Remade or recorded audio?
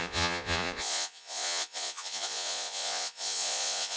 remade